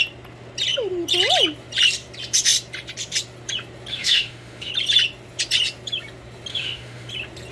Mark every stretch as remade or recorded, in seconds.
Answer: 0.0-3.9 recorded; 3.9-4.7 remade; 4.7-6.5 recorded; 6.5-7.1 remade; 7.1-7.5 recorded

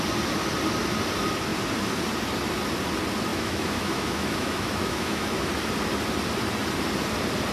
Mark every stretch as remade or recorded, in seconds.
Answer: 0.0-3.3 recorded; 3.3-5.5 remade; 5.5-7.5 recorded

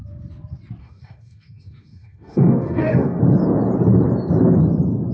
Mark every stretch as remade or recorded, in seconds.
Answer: 0.0-0.8 recorded; 0.8-3.2 remade; 3.2-5.1 recorded

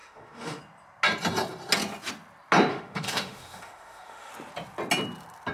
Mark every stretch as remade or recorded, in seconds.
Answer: 0.0-0.6 remade; 0.6-2.7 recorded; 2.7-4.3 remade; 4.3-5.5 recorded

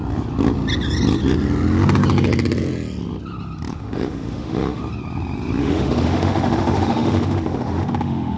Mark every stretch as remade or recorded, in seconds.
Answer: 0.0-3.7 recorded; 3.7-4.8 remade; 4.8-5.6 recorded; 5.6-8.4 remade

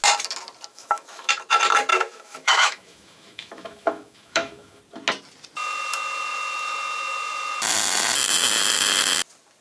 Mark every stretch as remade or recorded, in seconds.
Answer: 0.0-0.7 recorded; 0.7-1.3 remade; 1.3-1.9 recorded; 1.9-4.8 remade; 4.8-9.6 recorded